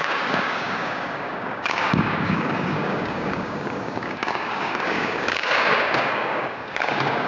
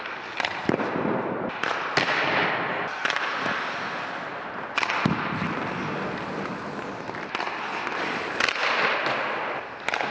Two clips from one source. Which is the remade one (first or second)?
first